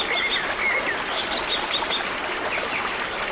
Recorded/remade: recorded